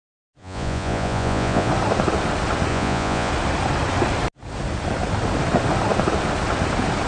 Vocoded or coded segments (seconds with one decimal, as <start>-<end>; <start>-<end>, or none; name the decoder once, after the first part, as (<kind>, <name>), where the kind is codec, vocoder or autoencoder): 0.4-1.7 (vocoder, Vocos); 2.7-3.3

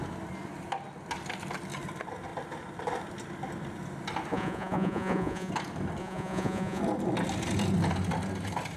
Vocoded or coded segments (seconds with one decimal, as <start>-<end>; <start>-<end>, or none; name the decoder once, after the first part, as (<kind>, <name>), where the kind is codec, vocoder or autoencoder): 4.3-5.5 (vocoder, Vocos); 6.0-6.8